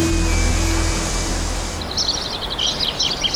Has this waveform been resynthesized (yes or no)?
no